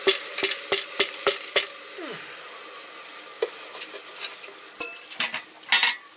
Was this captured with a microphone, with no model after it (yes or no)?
yes